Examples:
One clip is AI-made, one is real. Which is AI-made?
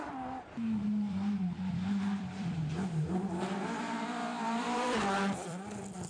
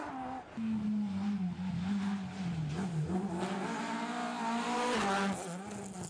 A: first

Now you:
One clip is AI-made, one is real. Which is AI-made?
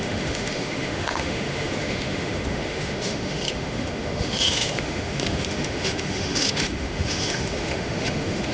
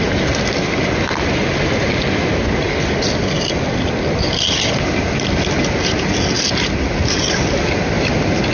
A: first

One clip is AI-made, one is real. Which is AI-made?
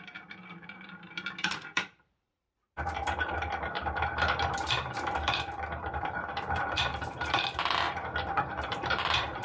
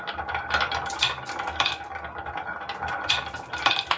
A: first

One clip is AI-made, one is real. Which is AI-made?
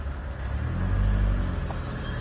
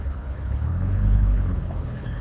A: second